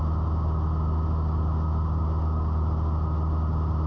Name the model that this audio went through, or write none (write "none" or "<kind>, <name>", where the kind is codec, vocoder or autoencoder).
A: none